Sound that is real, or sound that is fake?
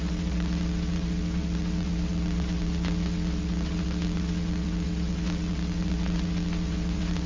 fake